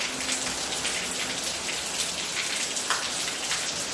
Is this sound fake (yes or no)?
no